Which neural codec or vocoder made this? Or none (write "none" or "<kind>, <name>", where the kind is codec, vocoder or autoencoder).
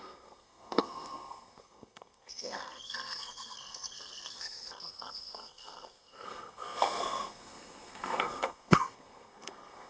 codec, SNAC